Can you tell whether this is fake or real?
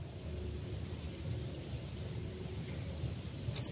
real